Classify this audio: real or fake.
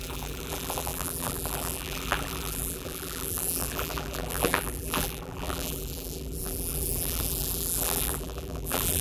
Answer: fake